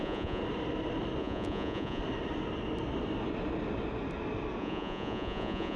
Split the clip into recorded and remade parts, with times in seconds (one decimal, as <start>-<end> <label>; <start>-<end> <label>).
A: 0.0-0.4 remade; 0.4-1.2 recorded; 1.2-2.0 remade; 2.0-4.6 recorded; 4.6-5.8 remade